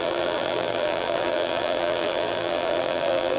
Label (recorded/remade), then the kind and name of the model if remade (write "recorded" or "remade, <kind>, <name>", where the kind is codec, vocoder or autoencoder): remade, vocoder, BigVGAN v2